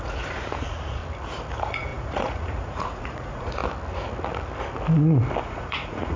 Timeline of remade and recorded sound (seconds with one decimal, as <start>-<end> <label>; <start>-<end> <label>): 0.0-1.0 remade; 1.0-1.5 recorded; 1.5-3.6 remade; 3.6-5.4 recorded; 5.4-6.2 remade